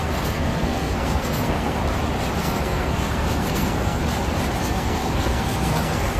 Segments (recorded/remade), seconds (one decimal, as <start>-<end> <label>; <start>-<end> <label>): 0.0-1.8 remade; 1.8-2.4 recorded; 2.4-4.0 remade; 4.0-4.6 recorded; 4.6-6.2 remade